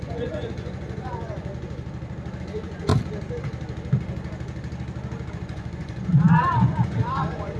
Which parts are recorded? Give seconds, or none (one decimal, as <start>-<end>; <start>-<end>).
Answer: 1.5-2.4; 2.9-5.3

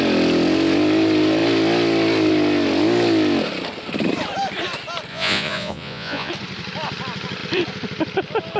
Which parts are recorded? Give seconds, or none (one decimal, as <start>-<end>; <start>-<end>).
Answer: 0.0-5.1; 6.3-8.6

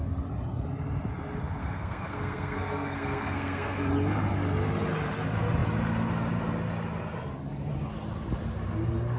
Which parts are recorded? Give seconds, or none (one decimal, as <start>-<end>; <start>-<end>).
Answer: 0.0-1.6; 3.9-9.2